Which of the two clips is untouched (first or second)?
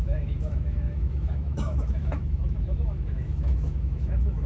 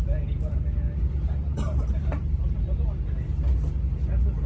second